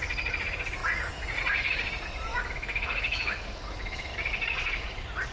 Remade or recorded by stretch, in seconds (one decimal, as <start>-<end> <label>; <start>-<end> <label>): 0.0-2.3 recorded; 2.3-3.6 remade; 3.6-5.3 recorded